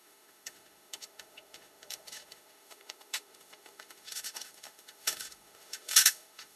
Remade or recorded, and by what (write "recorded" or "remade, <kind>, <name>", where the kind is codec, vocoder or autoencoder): remade, autoencoder, DAC-VAE